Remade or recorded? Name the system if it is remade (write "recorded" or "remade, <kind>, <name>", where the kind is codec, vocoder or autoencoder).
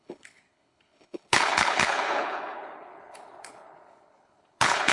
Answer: remade, codec, HILCodec